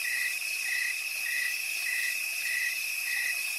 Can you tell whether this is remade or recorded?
remade